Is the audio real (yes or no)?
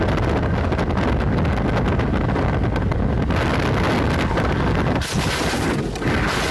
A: yes